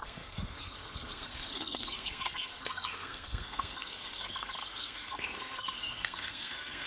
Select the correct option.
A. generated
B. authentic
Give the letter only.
A